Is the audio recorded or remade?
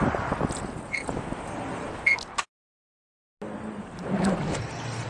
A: recorded